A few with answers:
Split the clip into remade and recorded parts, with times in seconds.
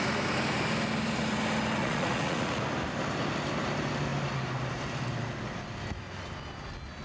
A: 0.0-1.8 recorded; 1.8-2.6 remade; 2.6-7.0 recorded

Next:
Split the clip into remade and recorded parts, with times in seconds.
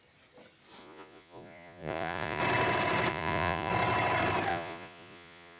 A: 0.0-0.8 recorded; 0.8-2.4 remade; 2.4-3.1 recorded; 3.1-3.7 remade; 3.7-4.5 recorded; 4.5-5.6 remade